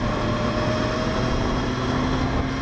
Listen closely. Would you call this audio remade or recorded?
recorded